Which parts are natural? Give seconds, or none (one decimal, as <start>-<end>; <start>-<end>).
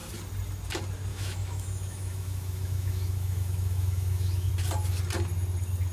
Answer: 0.0-1.1; 4.5-5.9